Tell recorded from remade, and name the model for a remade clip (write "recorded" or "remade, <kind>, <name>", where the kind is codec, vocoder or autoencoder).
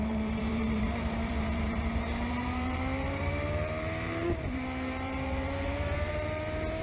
remade, vocoder, BigVGAN v2